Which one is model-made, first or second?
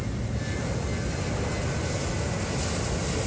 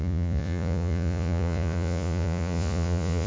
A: second